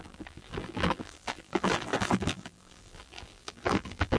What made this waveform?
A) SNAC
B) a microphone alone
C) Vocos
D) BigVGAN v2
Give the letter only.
D